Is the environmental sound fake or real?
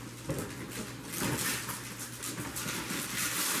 real